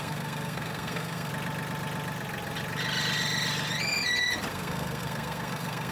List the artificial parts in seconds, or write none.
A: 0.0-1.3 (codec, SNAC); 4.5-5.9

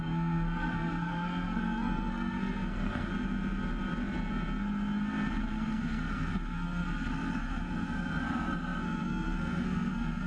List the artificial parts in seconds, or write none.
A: 0.0-3.1 (codec, SNAC); 5.5-10.3

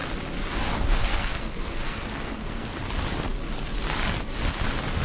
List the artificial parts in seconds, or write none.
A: 1.0-2.8 (codec, SNAC)